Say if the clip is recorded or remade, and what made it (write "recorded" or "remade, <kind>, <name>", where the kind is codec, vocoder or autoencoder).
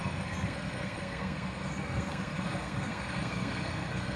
remade, codec, SNAC